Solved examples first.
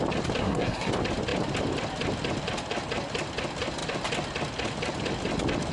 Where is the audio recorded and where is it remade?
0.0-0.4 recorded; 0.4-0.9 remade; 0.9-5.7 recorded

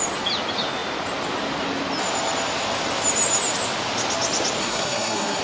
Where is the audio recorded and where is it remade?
0.0-4.6 recorded; 4.6-5.4 remade

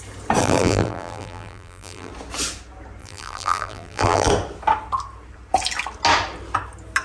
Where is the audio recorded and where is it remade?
0.0-0.4 recorded; 0.4-2.1 remade; 2.1-3.0 recorded; 3.0-4.3 remade; 4.3-7.0 recorded

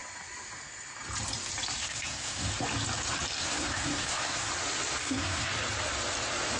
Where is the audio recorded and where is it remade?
0.0-1.8 recorded; 1.8-2.5 remade; 2.5-3.4 recorded; 3.4-4.5 remade; 4.5-5.0 recorded; 5.0-5.5 remade; 5.5-6.6 recorded

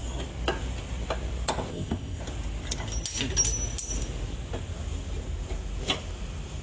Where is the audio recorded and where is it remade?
0.0-1.7 recorded; 1.7-2.2 remade; 2.2-6.6 recorded

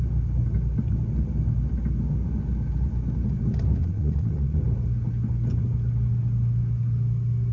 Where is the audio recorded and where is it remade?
0.0-3.8 recorded; 3.8-4.6 remade; 4.6-7.5 recorded

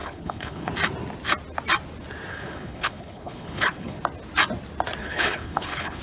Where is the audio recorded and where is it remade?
0.0-0.7 remade; 0.7-2.3 recorded; 2.3-4.0 remade; 4.0-5.0 recorded; 5.0-6.0 remade